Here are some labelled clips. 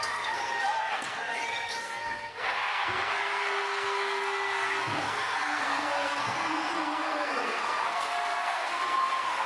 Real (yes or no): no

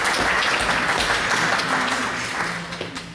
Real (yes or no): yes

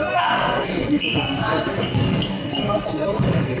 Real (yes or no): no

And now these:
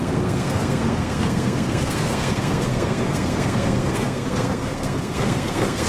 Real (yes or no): no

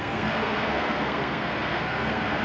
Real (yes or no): no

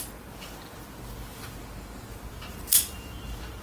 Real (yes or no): yes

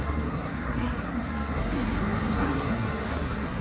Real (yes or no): no